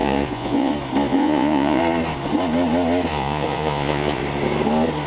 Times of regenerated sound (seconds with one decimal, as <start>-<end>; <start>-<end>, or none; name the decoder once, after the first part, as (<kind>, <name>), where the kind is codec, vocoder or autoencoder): 0.0-0.7 (vocoder, Vocos); 1.1-1.8; 3.1-4.2